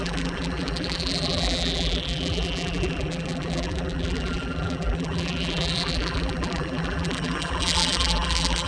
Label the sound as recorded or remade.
remade